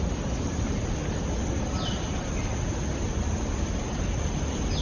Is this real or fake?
real